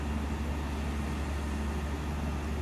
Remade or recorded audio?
recorded